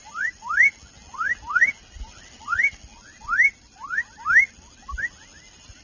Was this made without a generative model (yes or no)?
yes